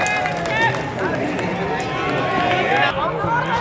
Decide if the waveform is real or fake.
real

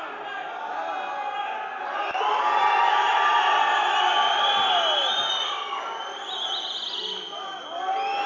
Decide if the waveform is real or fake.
real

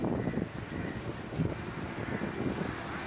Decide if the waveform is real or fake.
real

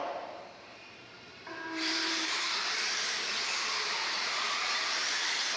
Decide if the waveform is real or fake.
fake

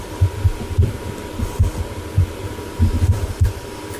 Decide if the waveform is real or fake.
real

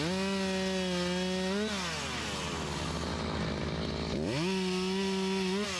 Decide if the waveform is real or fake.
real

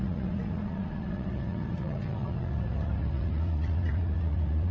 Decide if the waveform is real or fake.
fake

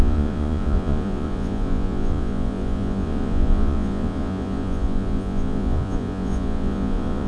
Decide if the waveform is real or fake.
fake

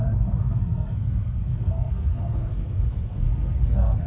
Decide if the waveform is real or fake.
fake